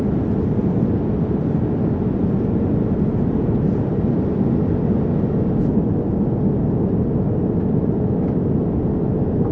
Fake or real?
real